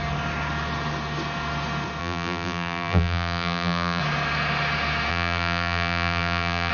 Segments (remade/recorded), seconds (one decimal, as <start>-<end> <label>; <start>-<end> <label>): 0.0-2.0 recorded; 2.0-4.0 remade; 4.0-5.1 recorded; 5.1-6.7 remade